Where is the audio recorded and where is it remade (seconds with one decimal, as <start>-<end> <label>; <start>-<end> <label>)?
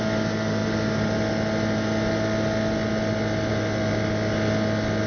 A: 0.0-5.1 recorded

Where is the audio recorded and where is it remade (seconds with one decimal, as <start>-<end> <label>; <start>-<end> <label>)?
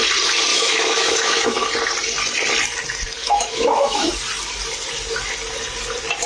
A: 0.0-0.5 recorded; 0.5-1.7 remade; 1.7-3.2 recorded; 3.2-4.1 remade; 4.1-6.3 recorded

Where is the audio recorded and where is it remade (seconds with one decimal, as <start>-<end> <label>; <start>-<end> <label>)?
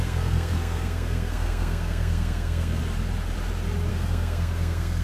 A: 0.0-2.8 remade; 2.8-3.9 recorded; 3.9-5.0 remade